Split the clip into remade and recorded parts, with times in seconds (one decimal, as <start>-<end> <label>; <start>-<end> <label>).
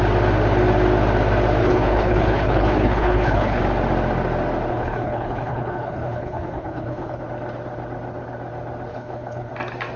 0.0-1.6 recorded; 1.6-3.6 remade; 3.6-4.7 recorded; 4.7-7.2 remade; 7.2-8.9 recorded; 8.9-9.5 remade; 9.5-10.0 recorded